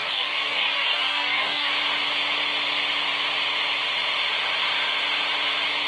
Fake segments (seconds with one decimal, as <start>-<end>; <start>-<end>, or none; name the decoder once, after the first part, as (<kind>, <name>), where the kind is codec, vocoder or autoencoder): 0.0-1.7 (codec, DAC)